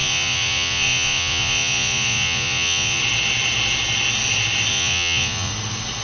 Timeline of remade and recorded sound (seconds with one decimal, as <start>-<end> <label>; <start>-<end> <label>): 0.0-3.0 remade; 3.0-4.7 recorded; 4.7-5.5 remade; 5.5-6.0 recorded